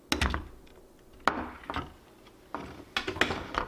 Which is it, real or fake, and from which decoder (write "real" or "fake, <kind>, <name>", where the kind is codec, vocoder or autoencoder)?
real